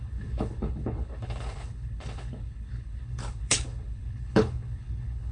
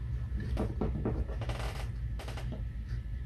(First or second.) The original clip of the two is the second